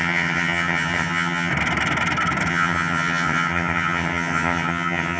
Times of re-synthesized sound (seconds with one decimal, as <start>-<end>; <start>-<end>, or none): 0.0-1.5; 2.5-5.2